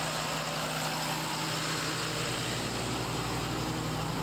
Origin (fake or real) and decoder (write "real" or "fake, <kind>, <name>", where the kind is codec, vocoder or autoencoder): real